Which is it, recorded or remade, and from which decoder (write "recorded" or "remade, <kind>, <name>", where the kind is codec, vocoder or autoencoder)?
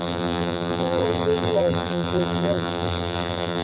remade, vocoder, BigVGAN v2